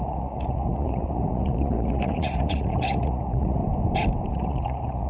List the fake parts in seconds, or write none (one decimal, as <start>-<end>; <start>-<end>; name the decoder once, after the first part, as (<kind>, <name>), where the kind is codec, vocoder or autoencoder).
0.0-3.6 (vocoder, Vocos); 4.3-5.1